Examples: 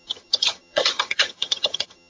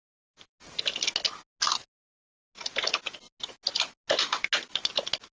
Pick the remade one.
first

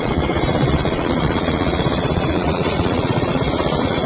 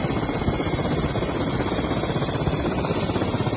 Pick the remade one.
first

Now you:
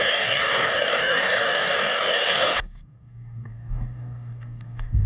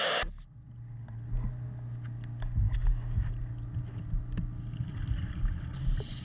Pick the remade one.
first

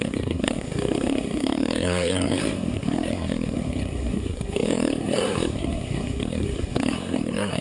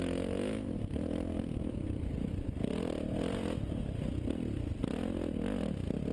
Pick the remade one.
first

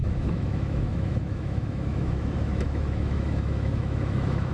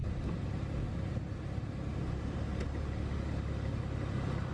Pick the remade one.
first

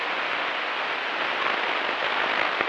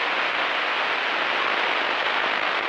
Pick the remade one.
first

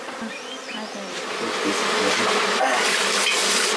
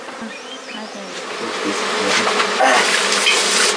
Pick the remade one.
first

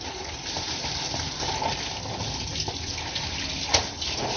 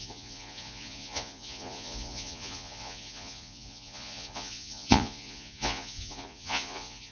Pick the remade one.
second